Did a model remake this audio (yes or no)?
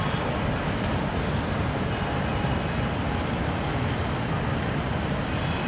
no